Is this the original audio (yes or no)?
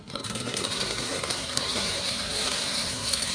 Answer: no